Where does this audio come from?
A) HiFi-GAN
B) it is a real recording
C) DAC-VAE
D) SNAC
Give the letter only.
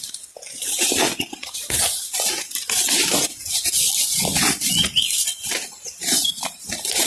B